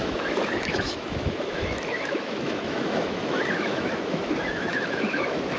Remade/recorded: remade